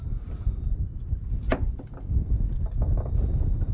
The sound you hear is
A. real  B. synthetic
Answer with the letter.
A